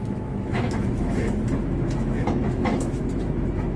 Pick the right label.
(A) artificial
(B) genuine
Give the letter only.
A